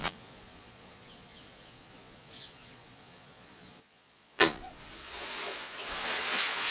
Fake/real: fake